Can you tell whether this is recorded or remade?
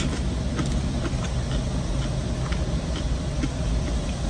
recorded